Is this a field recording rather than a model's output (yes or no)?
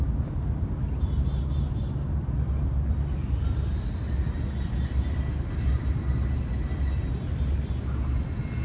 yes